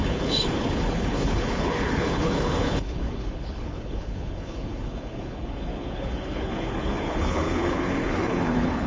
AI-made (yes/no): yes